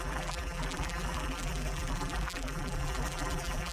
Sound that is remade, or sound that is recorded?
remade